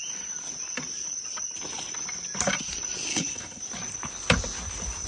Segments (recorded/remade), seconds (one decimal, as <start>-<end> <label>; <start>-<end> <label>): 0.0-3.1 recorded; 3.1-3.6 remade; 3.6-5.1 recorded